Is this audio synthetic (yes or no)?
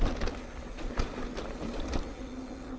no